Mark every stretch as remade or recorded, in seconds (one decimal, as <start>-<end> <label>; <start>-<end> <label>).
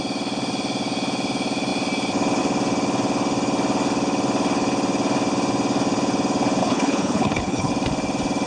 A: 0.0-6.6 recorded; 6.6-7.7 remade; 7.7-8.5 recorded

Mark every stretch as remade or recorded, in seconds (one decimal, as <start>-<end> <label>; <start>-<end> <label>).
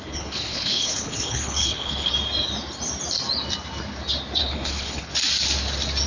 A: 0.0-2.1 remade; 2.1-4.4 recorded; 4.4-5.1 remade; 5.1-6.1 recorded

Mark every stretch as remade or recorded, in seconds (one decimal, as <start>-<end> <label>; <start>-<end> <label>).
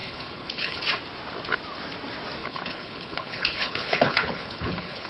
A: 0.0-0.8 remade; 0.8-2.4 recorded; 2.4-5.1 remade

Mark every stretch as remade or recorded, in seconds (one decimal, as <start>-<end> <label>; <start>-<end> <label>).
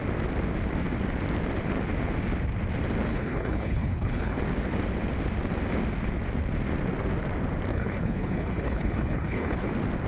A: 0.0-3.1 recorded; 3.1-4.4 remade; 4.4-7.7 recorded; 7.7-9.7 remade; 9.7-10.1 recorded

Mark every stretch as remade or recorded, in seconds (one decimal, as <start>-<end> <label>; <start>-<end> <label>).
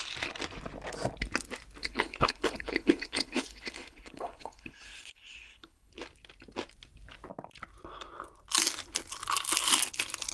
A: 0.0-1.8 recorded; 1.8-5.9 remade; 5.9-10.3 recorded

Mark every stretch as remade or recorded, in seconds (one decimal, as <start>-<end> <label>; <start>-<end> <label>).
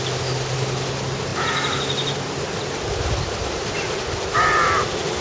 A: 0.0-5.2 recorded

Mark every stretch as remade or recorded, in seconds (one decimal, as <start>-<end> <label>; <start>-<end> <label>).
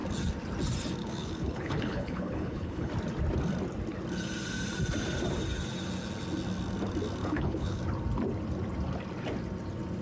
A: 0.0-1.0 recorded; 1.0-2.9 remade; 2.9-7.2 recorded; 7.2-7.8 remade; 7.8-10.0 recorded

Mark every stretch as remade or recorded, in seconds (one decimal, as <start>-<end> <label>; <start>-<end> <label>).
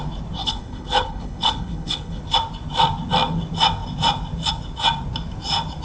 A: 0.0-0.4 recorded; 0.4-2.2 remade; 2.2-5.8 recorded